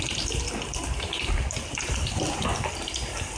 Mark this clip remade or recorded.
recorded